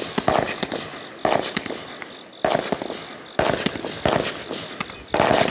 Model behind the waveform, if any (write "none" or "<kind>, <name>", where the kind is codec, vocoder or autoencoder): none